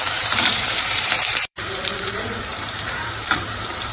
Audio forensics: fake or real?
fake